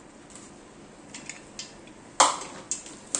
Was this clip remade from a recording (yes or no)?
no